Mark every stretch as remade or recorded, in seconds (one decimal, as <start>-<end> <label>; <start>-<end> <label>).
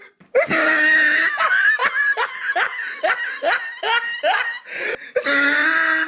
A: 0.0-6.1 recorded